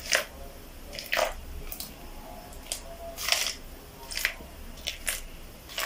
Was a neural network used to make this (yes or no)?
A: no